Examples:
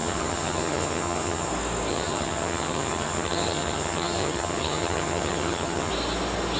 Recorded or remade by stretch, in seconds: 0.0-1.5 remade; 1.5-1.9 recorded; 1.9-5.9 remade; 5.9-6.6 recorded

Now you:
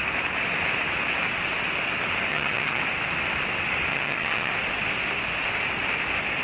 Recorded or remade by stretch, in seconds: 0.0-2.3 recorded; 2.3-2.8 remade; 2.8-3.9 recorded; 3.9-4.5 remade; 4.5-6.4 recorded

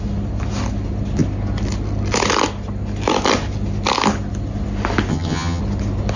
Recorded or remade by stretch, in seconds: 0.0-5.1 recorded; 5.1-5.6 remade; 5.6-6.2 recorded

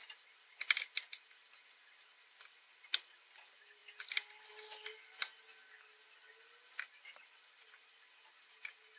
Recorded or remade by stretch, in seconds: 0.0-9.0 recorded

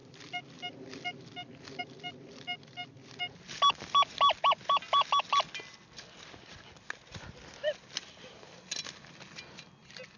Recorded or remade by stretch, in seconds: 0.0-10.2 recorded

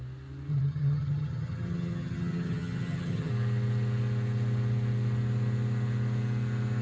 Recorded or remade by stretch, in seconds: 0.0-0.5 recorded; 0.5-3.3 remade; 3.3-6.8 recorded